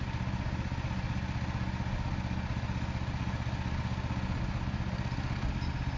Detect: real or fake real